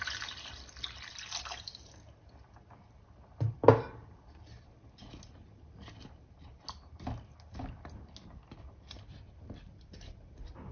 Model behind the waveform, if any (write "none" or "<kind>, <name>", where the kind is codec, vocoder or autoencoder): none